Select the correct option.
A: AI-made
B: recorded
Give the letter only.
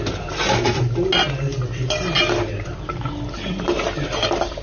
B